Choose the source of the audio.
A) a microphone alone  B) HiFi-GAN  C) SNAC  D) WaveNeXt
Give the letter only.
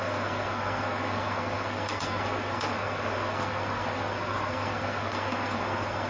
C